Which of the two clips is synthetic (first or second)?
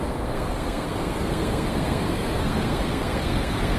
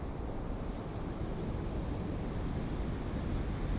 first